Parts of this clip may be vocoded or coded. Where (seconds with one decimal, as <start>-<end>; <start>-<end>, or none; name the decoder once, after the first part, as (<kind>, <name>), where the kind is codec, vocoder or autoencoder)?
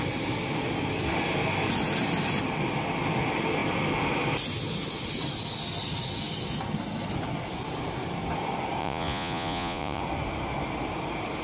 8.8-10.0 (vocoder, Vocos)